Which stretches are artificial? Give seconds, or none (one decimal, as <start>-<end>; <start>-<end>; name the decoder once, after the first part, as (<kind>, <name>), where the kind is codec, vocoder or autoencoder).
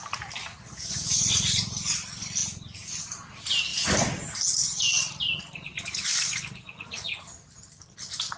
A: none